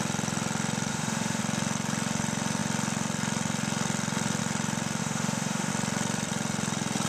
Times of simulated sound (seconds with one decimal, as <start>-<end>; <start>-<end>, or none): 0.9-1.4; 5.0-5.7

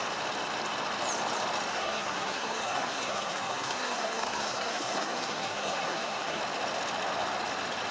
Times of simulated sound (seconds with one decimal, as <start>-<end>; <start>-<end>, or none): 1.7-6.4

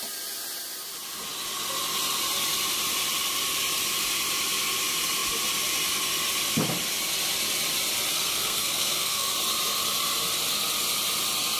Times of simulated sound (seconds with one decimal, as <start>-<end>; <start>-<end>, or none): 8.1-9.3

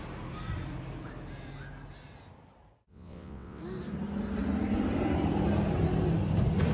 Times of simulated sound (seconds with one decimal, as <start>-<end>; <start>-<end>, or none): 2.9-3.6